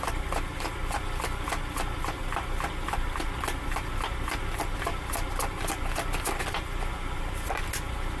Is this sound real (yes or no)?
yes